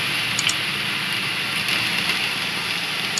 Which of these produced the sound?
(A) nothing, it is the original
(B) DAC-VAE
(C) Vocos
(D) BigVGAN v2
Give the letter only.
A